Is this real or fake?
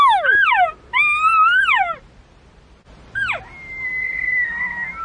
real